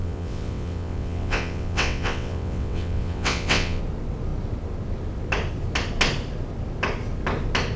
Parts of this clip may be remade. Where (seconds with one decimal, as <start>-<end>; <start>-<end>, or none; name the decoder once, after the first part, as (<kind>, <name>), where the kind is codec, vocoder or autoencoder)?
0.0-3.8 (vocoder, WaveNeXt)